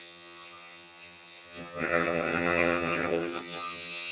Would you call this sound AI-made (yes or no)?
yes